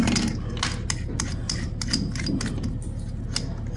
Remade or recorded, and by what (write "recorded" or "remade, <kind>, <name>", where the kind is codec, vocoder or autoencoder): recorded